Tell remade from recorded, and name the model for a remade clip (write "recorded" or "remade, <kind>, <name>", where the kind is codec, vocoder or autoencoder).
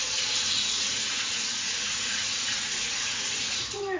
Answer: remade, vocoder, Vocos